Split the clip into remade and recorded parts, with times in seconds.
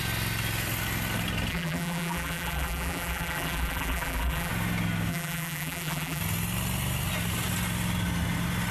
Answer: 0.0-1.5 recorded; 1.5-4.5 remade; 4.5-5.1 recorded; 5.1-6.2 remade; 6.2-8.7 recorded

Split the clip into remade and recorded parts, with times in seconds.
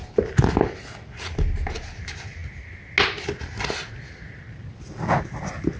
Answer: 0.0-5.8 recorded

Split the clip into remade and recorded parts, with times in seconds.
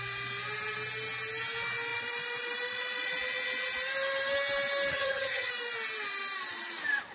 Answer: 0.0-4.9 recorded; 4.9-5.5 remade; 5.5-7.1 recorded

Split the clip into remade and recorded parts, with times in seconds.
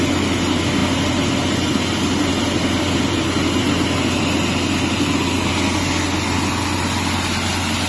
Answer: 0.0-7.9 recorded